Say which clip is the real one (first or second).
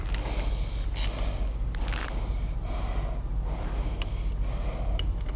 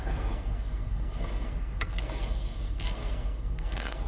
first